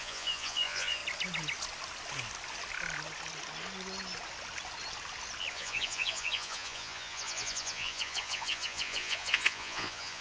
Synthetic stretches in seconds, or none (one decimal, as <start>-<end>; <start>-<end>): 0.0-1.0; 5.5-10.2